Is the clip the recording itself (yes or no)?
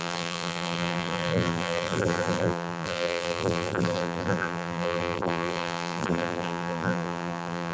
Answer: no